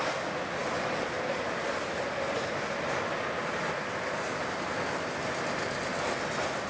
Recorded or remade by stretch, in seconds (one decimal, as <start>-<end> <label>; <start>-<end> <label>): 0.0-6.7 recorded